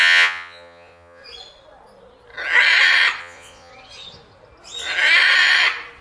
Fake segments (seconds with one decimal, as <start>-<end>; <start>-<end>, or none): 0.0-1.2; 3.2-3.7